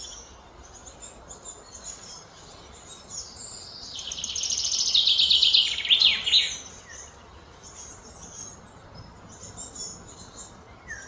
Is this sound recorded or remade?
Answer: recorded